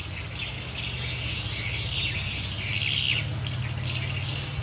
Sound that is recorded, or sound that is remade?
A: recorded